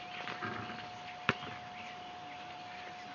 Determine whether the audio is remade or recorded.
recorded